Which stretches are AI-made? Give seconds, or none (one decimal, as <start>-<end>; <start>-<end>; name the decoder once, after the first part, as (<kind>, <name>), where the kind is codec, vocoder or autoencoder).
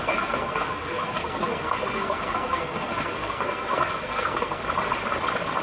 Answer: 0.0-4.6 (codec, SNAC)